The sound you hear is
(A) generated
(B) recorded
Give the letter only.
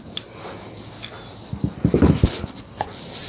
B